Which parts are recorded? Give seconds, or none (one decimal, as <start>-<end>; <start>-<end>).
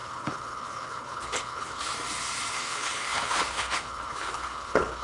1.9-2.5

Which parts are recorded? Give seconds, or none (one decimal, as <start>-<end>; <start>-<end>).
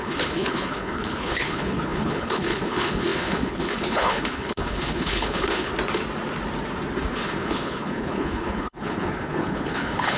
5.7-7.1